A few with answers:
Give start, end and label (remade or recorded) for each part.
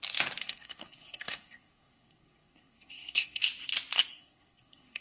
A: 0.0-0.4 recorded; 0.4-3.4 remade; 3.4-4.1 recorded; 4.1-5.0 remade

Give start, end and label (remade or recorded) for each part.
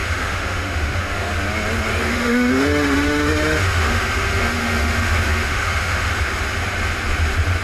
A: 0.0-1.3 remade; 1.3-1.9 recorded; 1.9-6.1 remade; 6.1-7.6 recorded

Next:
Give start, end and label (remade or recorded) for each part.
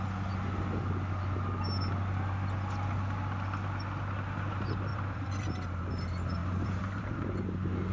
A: 0.0-4.9 recorded; 4.9-5.9 remade; 5.9-6.4 recorded; 6.4-7.0 remade; 7.0-7.9 recorded